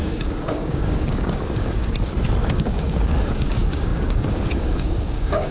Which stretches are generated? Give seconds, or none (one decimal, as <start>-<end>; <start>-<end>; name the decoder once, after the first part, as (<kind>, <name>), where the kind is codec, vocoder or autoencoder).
0.0-1.8 (codec, DAC); 2.5-5.5